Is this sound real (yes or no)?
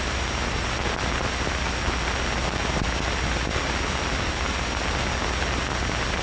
yes